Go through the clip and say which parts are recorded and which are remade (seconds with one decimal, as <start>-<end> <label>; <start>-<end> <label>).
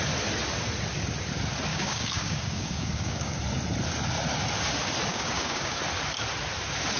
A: 0.0-1.7 recorded; 1.7-3.4 remade; 3.4-5.1 recorded; 5.1-5.8 remade; 5.8-7.0 recorded